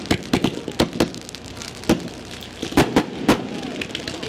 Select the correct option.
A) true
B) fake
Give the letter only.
A